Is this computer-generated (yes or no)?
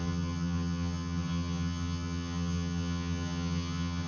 yes